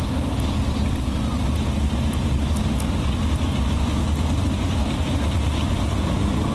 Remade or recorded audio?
recorded